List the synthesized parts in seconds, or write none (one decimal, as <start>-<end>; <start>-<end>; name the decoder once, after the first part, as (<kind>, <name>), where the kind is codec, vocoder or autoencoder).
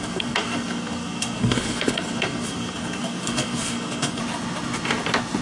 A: 0.0-4.2 (codec, SNAC)